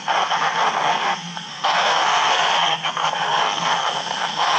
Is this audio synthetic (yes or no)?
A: yes